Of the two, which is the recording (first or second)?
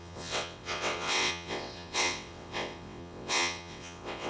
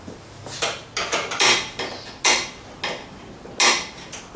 second